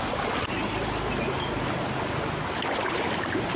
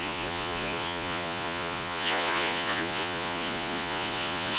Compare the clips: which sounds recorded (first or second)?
first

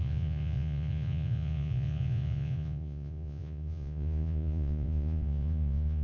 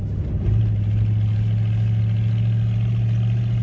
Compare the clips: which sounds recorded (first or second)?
second